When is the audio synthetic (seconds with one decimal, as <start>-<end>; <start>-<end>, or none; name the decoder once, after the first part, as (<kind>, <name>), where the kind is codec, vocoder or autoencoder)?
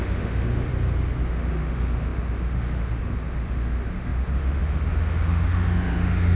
0.0-0.7 (autoencoder, DAC-VAE); 1.3-6.3